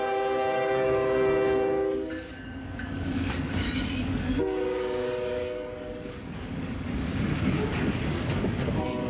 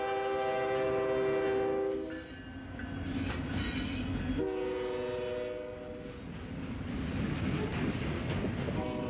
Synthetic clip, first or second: first